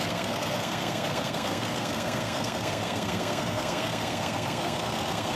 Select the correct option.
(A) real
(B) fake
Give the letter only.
B